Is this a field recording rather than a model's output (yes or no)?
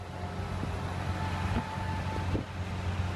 yes